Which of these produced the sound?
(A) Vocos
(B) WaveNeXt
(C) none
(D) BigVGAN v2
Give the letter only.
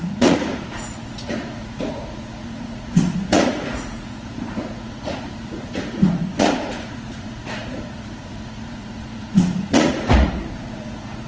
A